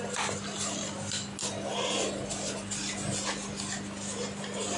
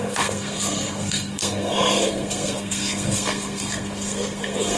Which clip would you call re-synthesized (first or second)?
second